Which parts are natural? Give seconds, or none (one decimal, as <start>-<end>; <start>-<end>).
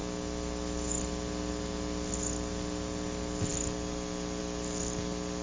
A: 0.0-5.4